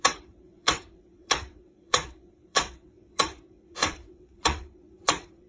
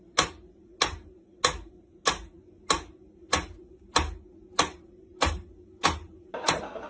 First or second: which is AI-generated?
first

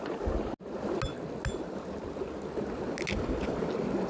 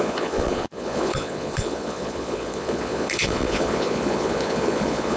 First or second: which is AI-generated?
second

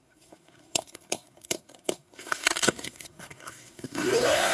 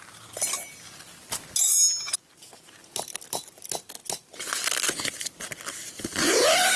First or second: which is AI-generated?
first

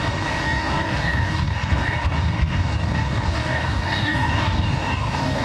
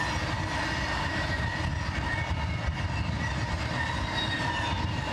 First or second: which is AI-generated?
first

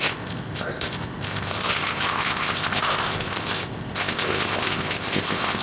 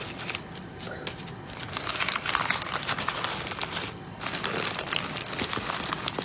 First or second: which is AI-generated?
first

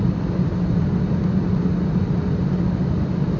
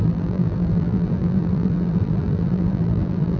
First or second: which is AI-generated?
second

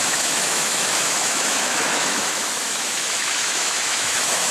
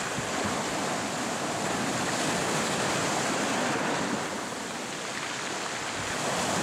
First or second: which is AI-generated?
first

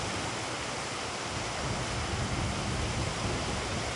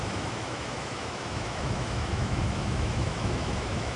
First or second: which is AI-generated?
second